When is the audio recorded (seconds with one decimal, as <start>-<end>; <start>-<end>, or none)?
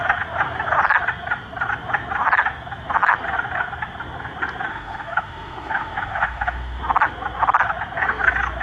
0.0-4.7; 6.8-8.6